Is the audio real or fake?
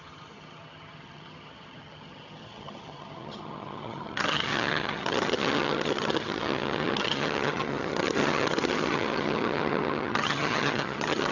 fake